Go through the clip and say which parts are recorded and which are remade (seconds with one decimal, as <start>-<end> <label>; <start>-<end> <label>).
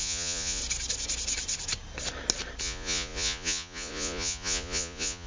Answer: 0.0-0.6 remade; 0.6-2.6 recorded; 2.6-5.3 remade